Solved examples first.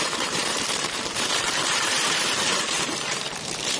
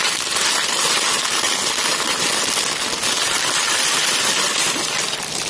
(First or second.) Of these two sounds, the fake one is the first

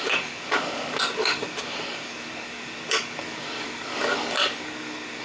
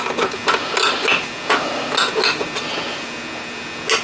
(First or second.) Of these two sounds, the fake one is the first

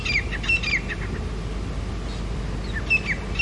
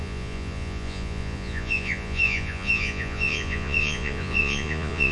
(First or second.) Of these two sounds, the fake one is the second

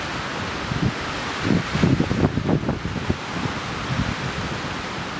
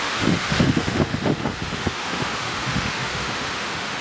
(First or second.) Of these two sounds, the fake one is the second